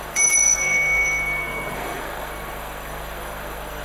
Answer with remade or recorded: remade